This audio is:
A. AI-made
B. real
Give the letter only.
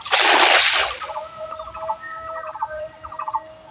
B